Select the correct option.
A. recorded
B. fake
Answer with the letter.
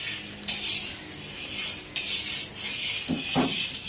A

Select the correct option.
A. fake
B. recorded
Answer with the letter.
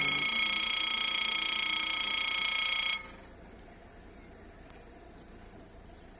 B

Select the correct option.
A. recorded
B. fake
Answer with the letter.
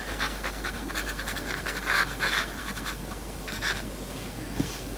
B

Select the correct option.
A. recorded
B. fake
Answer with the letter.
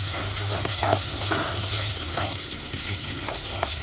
B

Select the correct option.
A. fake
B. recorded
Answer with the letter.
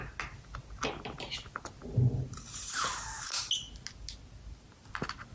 B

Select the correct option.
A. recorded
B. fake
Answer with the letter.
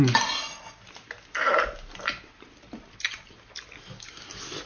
A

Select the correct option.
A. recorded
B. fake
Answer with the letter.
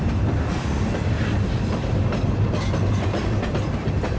A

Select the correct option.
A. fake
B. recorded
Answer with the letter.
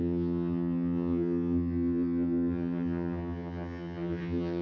A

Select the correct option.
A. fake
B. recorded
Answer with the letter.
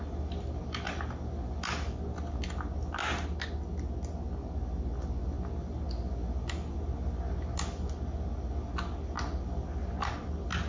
B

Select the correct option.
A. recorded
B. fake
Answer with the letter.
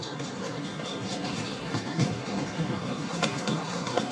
B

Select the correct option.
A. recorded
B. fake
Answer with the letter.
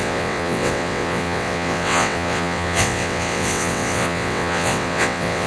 B